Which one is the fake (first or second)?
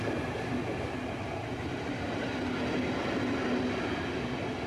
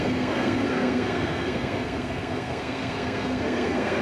second